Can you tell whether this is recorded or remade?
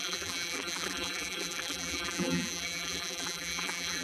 remade